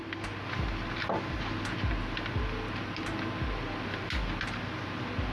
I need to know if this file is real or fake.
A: real